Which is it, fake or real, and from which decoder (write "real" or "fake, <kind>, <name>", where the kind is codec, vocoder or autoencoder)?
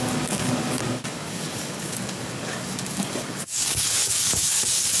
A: fake, codec, DAC